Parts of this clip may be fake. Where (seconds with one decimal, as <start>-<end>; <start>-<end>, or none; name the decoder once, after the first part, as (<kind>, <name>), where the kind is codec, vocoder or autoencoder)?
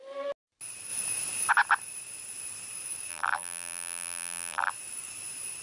3.1-4.7 (vocoder, BigVGAN v2)